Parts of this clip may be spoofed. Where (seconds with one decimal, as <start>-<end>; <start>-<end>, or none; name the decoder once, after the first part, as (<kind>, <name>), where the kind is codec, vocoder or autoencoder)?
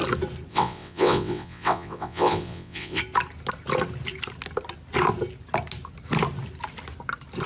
0.5-3.0 (vocoder, WaveNeXt)